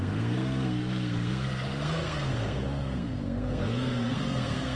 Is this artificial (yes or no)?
yes